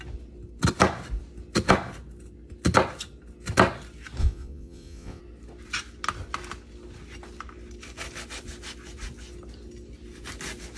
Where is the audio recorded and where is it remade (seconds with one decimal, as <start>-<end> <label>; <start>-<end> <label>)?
0.0-4.2 recorded; 4.2-5.2 remade; 5.2-10.8 recorded